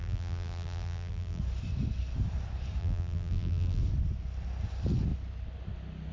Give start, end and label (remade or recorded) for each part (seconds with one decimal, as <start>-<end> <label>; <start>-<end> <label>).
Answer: 0.0-1.4 remade; 1.4-2.8 recorded; 2.8-3.8 remade; 3.8-6.1 recorded